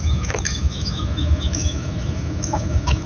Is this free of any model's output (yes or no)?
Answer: no